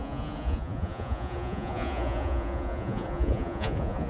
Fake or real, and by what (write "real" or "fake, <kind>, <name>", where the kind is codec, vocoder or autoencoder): fake, vocoder, Vocos